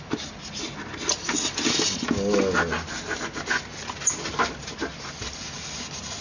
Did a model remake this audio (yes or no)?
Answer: no